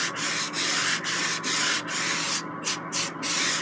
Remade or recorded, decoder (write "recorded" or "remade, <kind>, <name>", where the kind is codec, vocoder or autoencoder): recorded